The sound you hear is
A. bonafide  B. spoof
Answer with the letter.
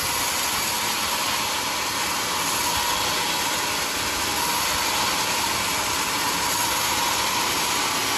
A